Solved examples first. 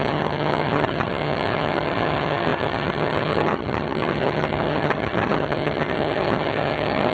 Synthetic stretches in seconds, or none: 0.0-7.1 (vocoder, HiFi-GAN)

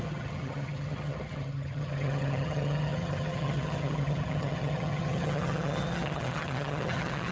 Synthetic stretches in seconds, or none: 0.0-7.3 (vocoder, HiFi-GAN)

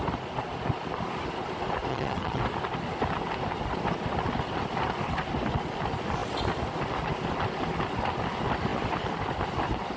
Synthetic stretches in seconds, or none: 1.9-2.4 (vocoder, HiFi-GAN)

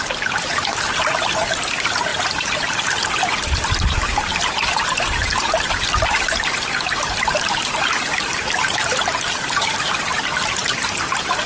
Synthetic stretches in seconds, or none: none

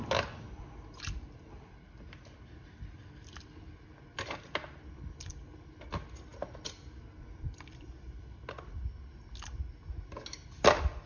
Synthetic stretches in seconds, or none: none

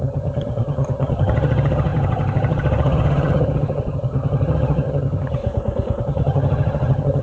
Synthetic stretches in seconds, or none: 0.0-5.4 (vocoder, HiFi-GAN); 6.0-7.2